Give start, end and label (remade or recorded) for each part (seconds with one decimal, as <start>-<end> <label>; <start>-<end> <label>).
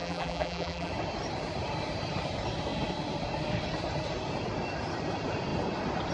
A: 0.0-0.9 remade; 0.9-6.1 recorded